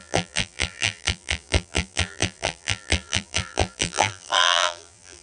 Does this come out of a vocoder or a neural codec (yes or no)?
yes